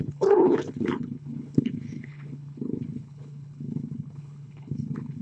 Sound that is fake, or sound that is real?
fake